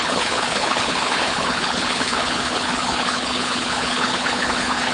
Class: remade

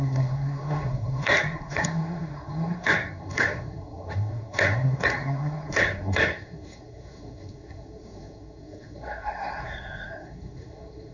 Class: remade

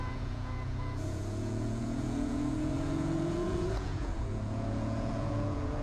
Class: remade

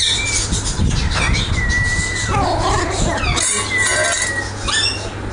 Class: recorded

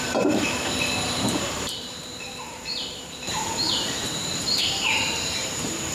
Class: remade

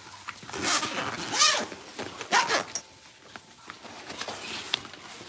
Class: recorded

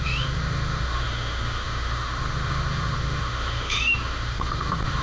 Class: remade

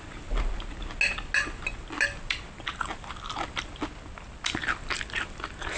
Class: recorded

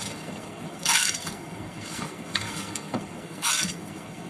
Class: remade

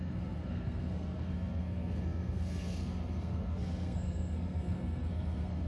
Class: remade